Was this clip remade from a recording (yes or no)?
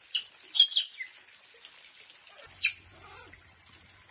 no